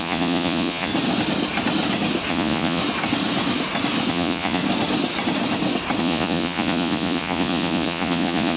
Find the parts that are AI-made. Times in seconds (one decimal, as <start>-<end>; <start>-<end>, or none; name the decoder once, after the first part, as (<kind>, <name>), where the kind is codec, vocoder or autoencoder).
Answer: 0.0-0.9 (vocoder, Vocos); 2.3-2.8; 4.1-4.6; 6.0-8.6